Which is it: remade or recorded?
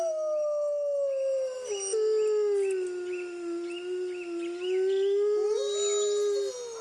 recorded